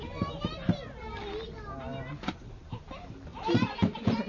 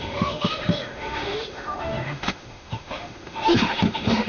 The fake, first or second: second